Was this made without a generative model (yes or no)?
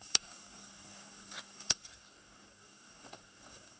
no